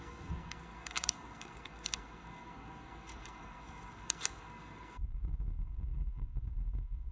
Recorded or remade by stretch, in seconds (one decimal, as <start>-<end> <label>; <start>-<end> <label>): 0.0-7.1 remade